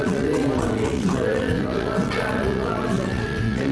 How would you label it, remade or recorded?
remade